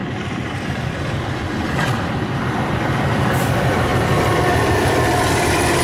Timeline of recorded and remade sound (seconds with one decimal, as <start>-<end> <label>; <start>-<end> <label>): 0.0-5.8 recorded